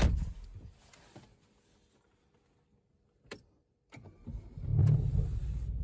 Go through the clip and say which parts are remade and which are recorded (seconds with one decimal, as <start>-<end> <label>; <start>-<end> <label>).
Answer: 0.0-2.9 recorded; 2.9-4.7 remade; 4.7-5.8 recorded